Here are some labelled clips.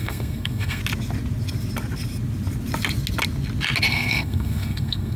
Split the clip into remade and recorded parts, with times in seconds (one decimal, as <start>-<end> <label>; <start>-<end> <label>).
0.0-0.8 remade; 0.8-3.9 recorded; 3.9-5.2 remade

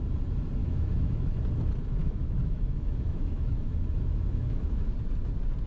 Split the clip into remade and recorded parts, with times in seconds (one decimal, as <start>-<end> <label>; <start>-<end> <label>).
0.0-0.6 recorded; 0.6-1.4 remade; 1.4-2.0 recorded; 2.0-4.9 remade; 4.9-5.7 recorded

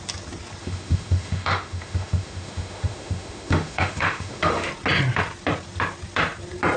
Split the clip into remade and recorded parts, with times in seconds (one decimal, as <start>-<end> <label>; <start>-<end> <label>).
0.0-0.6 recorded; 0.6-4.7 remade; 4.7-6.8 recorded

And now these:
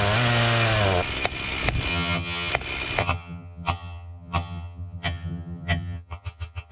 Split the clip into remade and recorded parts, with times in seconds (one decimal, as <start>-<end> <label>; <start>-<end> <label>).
0.0-1.9 recorded; 1.9-2.5 remade; 2.5-3.0 recorded; 3.0-6.7 remade

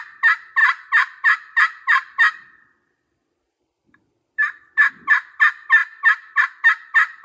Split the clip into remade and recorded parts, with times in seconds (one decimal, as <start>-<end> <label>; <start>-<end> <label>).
0.0-0.6 recorded; 0.6-4.9 remade; 4.9-5.8 recorded; 5.8-6.5 remade; 6.5-7.2 recorded

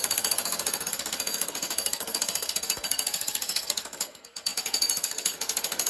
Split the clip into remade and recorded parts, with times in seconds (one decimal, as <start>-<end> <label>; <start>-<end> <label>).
0.0-5.9 remade

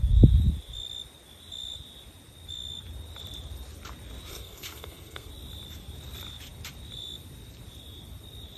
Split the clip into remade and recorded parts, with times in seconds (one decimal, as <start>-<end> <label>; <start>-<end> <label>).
0.0-4.3 recorded; 4.3-5.3 remade; 5.3-8.6 recorded